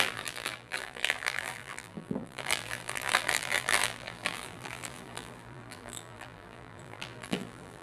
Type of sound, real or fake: fake